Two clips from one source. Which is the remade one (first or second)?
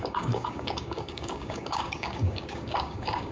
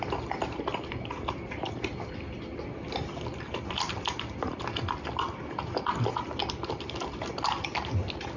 first